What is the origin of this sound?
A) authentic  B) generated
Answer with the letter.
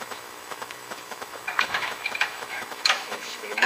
B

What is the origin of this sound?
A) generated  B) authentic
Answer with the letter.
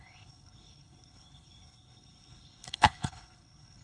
A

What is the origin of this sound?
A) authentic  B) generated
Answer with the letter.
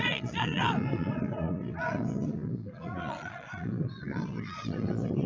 B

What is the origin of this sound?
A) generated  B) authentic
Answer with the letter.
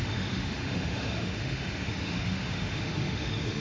A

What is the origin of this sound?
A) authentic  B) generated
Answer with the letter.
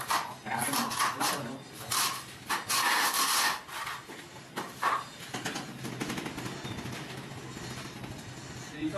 A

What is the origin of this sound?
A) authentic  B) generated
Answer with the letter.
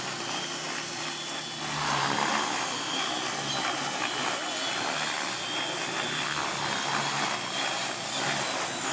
A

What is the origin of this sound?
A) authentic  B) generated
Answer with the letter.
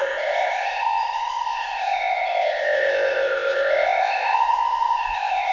B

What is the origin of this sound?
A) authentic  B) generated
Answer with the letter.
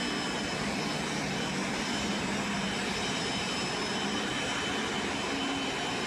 A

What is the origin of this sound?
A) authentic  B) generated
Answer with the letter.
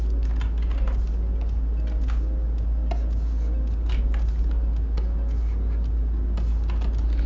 A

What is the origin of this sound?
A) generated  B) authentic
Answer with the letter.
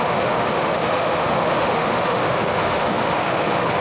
A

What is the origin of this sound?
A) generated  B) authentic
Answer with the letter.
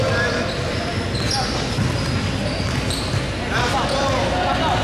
B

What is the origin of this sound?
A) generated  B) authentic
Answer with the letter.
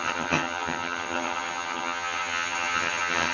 A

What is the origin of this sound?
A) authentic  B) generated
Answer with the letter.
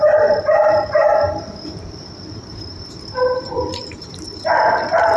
B